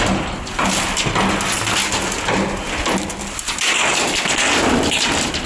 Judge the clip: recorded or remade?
recorded